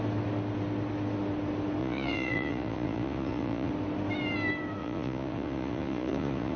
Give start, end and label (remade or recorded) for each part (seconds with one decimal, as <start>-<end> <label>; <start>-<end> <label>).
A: 0.0-1.8 recorded; 1.8-3.7 remade; 3.7-4.8 recorded; 4.8-6.6 remade